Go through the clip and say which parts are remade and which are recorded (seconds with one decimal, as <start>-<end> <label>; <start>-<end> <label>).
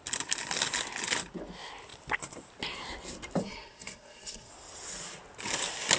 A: 0.0-3.4 recorded; 3.4-4.5 remade; 4.5-6.0 recorded